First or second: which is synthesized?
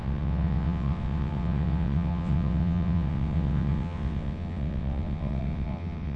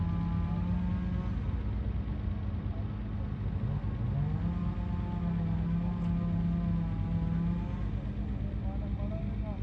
first